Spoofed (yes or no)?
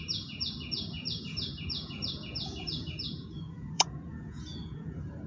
yes